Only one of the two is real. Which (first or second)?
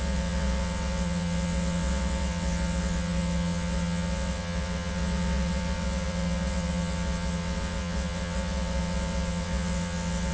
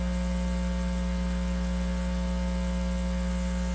second